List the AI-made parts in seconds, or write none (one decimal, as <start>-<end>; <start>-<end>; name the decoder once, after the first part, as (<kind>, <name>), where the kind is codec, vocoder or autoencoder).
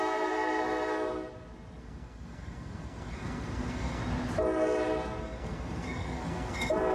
0.0-1.1 (codec, SNAC); 1.8-4.0; 5.2-6.9